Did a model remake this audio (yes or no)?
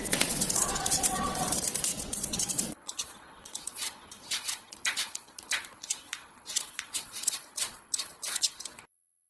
yes